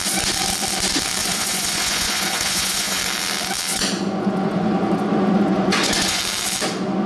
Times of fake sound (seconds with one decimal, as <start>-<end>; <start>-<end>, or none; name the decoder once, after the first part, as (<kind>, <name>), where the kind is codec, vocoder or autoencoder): 1.2-3.0 (vocoder, Vocos); 3.7-6.2